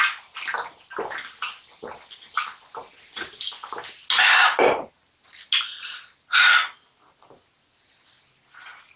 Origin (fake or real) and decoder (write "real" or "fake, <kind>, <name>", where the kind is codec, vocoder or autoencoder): real